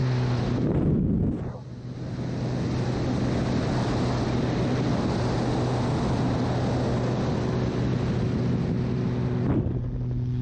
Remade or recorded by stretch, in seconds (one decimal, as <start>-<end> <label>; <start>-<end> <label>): 0.0-10.4 recorded